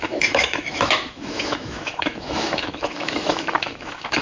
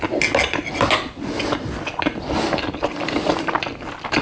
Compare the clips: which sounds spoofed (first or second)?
first